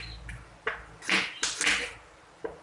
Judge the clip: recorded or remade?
recorded